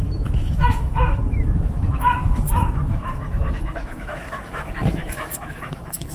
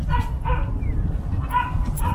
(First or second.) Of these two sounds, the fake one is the first